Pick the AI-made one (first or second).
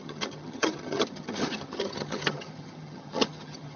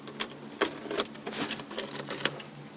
first